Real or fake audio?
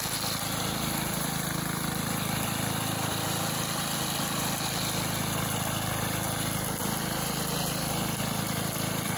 fake